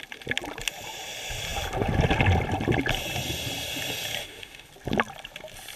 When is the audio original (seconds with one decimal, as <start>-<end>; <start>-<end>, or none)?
0.0-4.2; 4.7-5.8